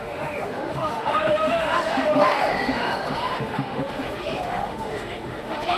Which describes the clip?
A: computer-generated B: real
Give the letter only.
A